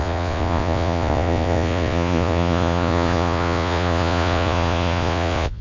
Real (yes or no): no